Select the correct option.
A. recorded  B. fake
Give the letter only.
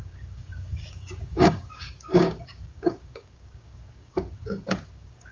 B